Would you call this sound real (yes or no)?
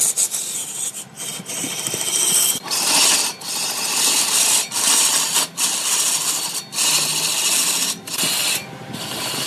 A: yes